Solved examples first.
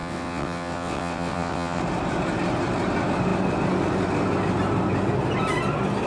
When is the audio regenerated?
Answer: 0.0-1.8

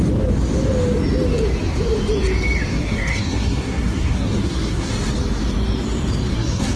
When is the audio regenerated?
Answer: 2.7-4.9; 6.3-6.8

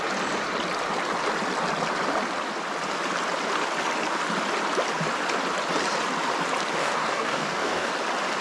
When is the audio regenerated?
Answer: 6.8-7.9

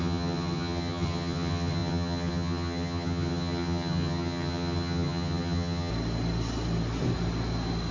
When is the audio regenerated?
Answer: 0.0-5.9

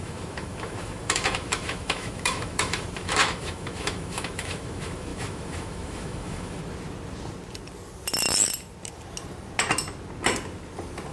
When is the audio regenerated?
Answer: 0.0-6.6

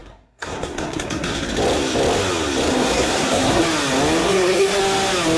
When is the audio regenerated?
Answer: 0.0-1.5; 2.7-3.6; 4.2-4.8

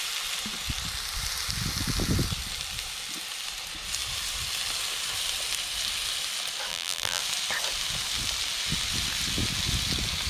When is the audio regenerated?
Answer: 6.7-7.2